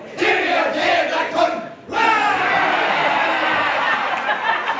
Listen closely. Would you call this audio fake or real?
real